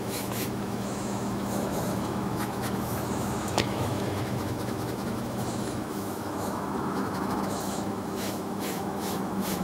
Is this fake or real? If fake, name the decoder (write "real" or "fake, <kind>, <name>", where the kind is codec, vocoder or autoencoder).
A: fake, autoencoder, DAC-VAE